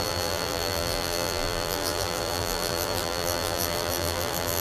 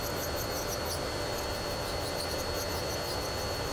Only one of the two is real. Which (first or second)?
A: second